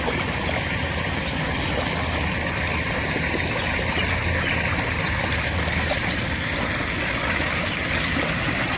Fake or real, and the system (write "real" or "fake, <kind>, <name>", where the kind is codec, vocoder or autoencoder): real